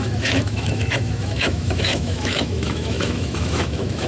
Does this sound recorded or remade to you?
remade